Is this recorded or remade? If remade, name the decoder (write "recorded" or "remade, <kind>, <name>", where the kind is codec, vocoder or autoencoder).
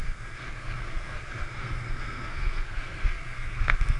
remade, codec, SNAC